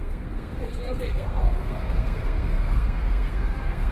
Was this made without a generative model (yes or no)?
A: no